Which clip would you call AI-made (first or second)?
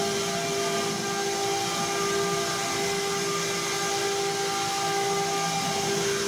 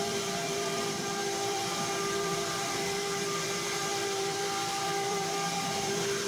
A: second